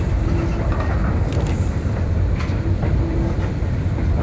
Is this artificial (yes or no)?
no